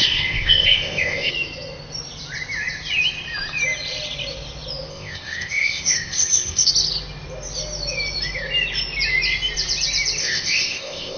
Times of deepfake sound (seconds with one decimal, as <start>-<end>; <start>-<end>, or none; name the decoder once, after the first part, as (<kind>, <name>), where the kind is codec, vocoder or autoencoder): 0.0-1.3 (codec, ZipCodec); 4.9-6.7; 10.2-11.2